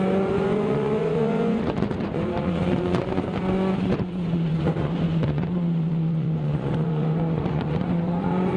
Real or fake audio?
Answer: fake